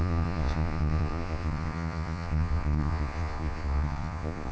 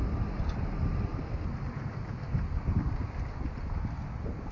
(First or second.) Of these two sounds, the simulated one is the first